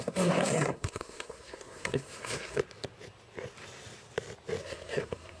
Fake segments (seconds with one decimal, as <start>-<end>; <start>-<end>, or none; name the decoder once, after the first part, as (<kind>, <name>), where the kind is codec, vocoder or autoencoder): 0.0-2.6 (codec, SNAC); 4.6-5.4